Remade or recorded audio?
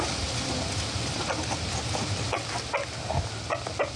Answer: recorded